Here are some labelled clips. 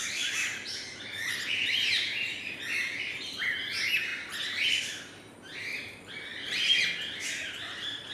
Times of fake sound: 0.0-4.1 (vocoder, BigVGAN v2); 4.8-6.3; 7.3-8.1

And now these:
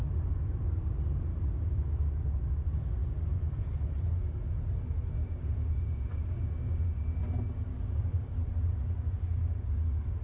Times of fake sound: 1.3-2.8 (codec, DAC); 5.2-7.2; 7.7-10.2

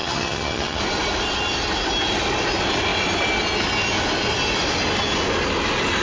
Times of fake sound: 0.0-0.8 (vocoder, HiFi-GAN)

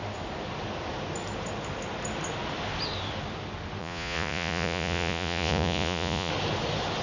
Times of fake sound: 3.8-6.3 (vocoder, Vocos)

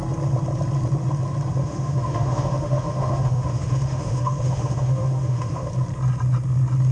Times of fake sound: 1.6-5.7 (autoencoder, DAC-VAE)